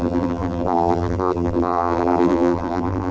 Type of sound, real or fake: fake